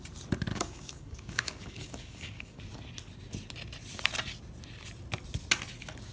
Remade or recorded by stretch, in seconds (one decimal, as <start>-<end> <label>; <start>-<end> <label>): 0.0-0.5 recorded; 0.5-2.6 remade; 2.6-6.1 recorded

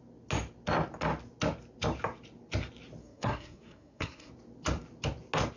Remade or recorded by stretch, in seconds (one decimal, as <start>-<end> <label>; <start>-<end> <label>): 0.0-3.0 recorded; 3.0-4.3 remade; 4.3-5.6 recorded

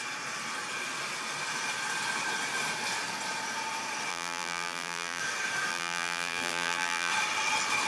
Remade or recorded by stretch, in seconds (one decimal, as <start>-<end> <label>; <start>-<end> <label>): 0.0-4.1 recorded; 4.1-5.2 remade; 5.2-5.7 recorded; 5.7-7.1 remade; 7.1-7.9 recorded

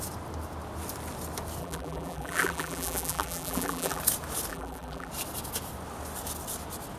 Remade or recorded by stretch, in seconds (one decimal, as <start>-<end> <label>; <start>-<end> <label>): 0.0-1.6 recorded; 1.6-4.0 remade; 4.0-4.5 recorded; 4.5-5.1 remade; 5.1-7.0 recorded

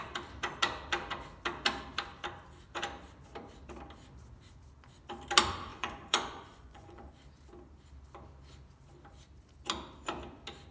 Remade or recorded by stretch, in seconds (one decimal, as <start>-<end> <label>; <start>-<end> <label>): 0.0-5.7 recorded; 5.7-7.1 remade; 7.1-10.7 recorded

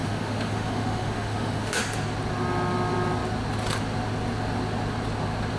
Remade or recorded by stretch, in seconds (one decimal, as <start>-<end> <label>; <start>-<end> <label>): 0.0-1.8 remade; 1.8-5.6 recorded

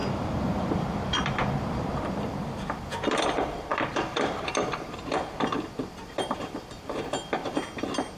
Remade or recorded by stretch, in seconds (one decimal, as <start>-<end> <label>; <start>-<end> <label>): 0.0-7.4 remade; 7.4-8.2 recorded